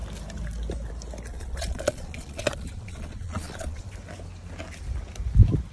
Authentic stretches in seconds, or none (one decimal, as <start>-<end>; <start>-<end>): 0.0-1.3; 3.8-5.7